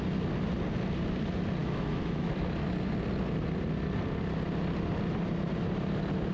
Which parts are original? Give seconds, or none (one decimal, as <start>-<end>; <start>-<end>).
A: 0.0-1.6; 2.3-6.3